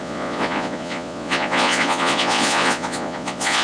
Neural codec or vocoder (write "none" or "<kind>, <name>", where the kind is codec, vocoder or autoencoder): vocoder, Vocos